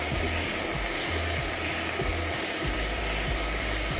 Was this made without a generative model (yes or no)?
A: yes